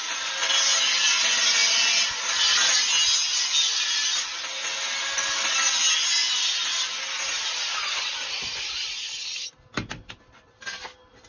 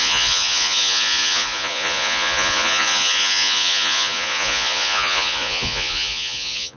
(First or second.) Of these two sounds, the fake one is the second